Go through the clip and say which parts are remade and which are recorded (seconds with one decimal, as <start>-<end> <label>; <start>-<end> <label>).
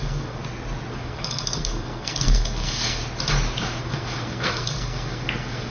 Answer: 0.0-0.4 remade; 0.4-0.9 recorded; 0.9-3.0 remade; 3.0-3.8 recorded; 3.8-5.7 remade